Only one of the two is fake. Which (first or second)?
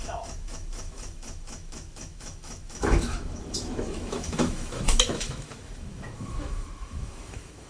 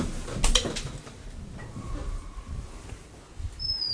first